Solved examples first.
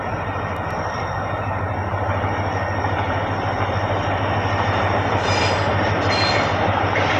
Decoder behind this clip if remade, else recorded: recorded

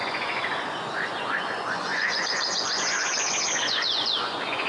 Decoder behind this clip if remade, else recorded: remade, vocoder, Vocos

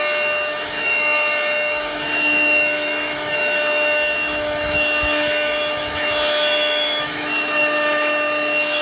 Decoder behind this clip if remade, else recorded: remade, autoencoder, DAC-VAE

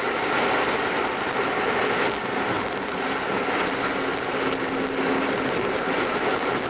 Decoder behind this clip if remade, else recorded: recorded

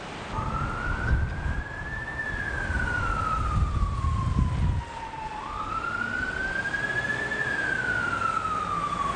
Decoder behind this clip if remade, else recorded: recorded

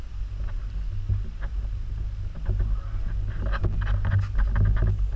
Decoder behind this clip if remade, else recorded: recorded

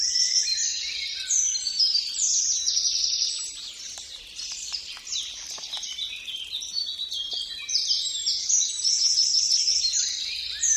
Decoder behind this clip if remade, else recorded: remade, vocoder, BigVGAN v2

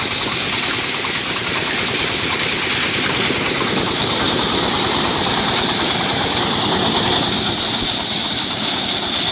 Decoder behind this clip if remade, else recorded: recorded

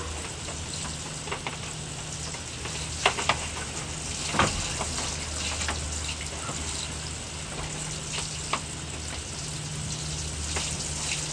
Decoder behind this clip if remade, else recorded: recorded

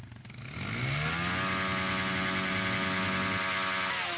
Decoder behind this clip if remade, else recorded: recorded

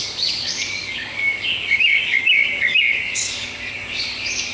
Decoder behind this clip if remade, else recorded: remade, codec, DAC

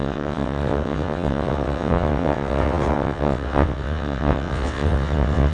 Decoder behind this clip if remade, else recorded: remade, vocoder, WaveNeXt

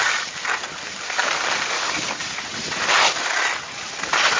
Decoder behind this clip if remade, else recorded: recorded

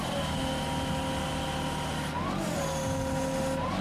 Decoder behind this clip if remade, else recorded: recorded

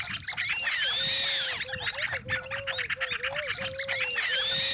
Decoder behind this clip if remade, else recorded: recorded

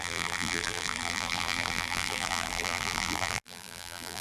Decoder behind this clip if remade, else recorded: remade, vocoder, BigVGAN v2